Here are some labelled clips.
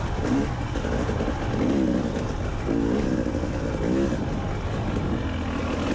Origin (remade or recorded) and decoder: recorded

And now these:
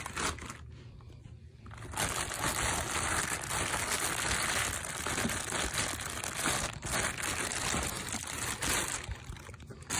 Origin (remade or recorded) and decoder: recorded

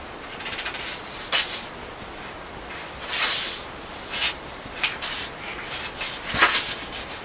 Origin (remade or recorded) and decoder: recorded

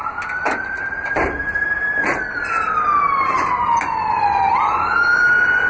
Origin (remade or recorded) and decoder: recorded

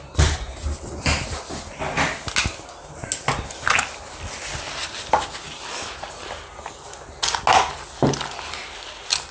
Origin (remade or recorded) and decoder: recorded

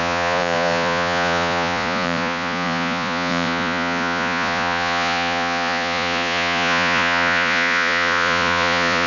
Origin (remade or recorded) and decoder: remade, vocoder, Vocos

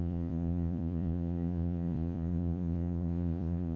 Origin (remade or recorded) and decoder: remade, vocoder, Vocos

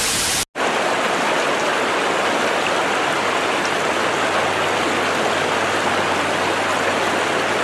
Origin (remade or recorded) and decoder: recorded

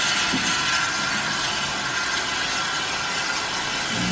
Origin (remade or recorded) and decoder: recorded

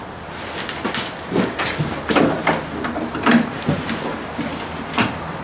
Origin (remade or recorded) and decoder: recorded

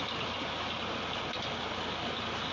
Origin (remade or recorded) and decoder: recorded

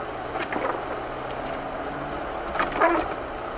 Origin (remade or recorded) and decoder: recorded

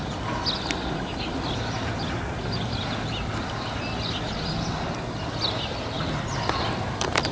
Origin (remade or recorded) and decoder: recorded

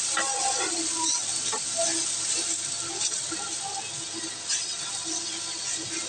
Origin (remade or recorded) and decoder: recorded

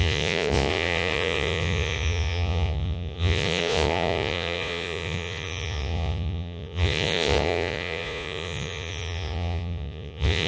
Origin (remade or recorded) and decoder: remade, vocoder, Vocos